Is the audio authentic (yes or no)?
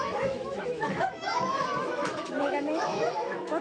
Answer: no